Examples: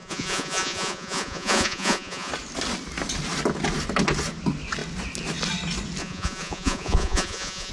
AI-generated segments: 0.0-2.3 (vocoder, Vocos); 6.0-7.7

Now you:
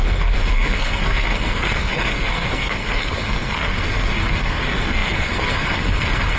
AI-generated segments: 0.0-6.4 (codec, SNAC)